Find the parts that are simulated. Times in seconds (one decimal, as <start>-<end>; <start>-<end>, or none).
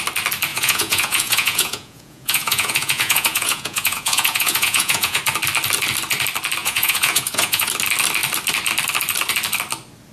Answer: 0.5-5.2; 6.6-7.7